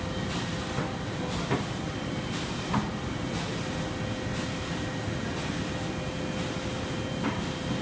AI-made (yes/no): no